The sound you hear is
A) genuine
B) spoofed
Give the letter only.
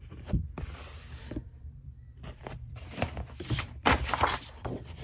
B